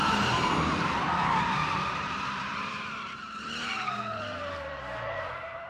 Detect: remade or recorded remade